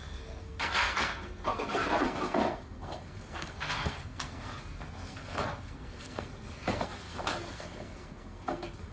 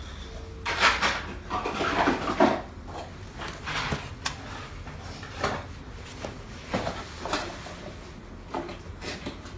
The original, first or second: second